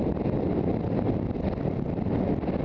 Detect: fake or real real